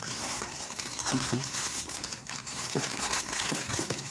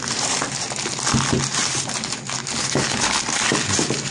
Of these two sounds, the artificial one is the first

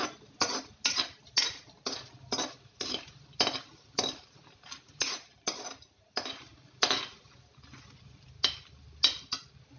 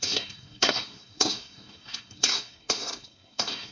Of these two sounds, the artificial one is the second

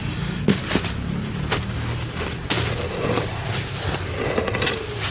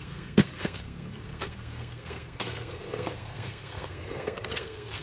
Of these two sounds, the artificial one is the second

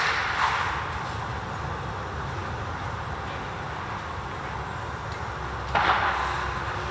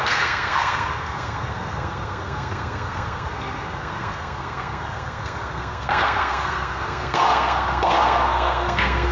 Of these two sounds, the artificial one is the second